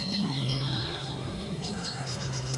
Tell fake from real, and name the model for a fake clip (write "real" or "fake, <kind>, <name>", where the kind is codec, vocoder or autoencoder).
fake, codec, SNAC